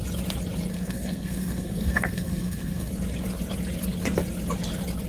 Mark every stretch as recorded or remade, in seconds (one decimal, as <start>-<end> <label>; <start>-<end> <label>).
0.0-0.7 recorded; 0.7-2.9 remade; 2.9-5.1 recorded